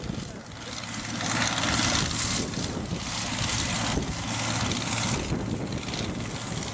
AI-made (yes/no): no